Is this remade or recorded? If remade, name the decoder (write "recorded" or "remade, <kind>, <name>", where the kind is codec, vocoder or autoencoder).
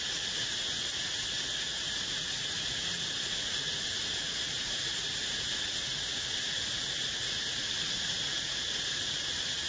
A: remade, vocoder, Vocos